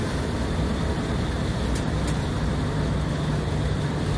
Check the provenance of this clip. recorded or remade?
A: recorded